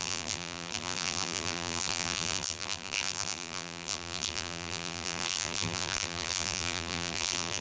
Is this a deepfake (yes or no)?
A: yes